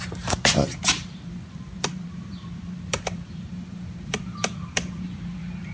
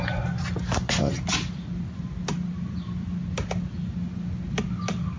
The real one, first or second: second